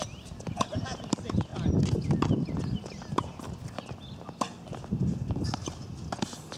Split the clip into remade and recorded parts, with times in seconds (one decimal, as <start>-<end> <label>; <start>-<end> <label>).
0.0-6.6 recorded